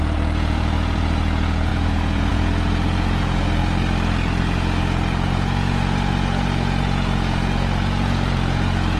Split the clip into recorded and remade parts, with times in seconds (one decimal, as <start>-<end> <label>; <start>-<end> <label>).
0.0-3.6 remade; 3.6-4.4 recorded; 4.4-9.0 remade